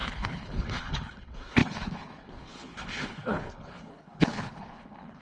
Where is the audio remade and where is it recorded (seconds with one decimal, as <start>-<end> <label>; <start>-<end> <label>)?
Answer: 0.0-5.2 remade